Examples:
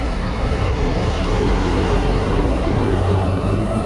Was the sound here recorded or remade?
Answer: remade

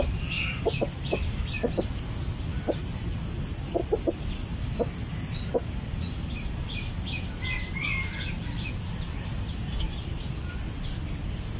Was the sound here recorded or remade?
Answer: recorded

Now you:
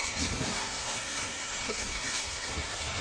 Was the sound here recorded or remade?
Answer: remade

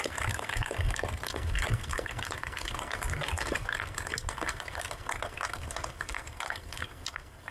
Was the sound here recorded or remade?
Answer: remade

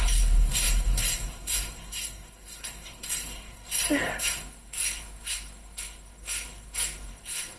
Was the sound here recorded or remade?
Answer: remade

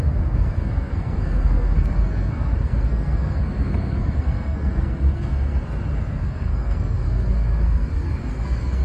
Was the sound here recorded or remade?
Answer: remade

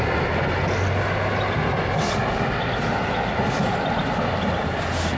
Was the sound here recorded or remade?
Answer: recorded